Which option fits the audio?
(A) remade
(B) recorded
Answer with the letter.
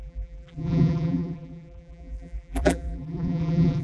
A